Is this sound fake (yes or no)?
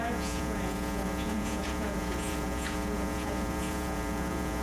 yes